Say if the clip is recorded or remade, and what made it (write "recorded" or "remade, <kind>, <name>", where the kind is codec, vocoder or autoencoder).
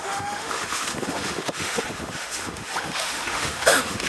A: remade, autoencoder, DAC-VAE